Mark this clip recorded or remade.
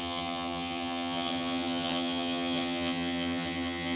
remade